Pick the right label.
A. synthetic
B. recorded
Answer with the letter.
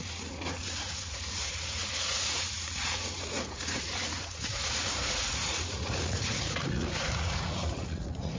A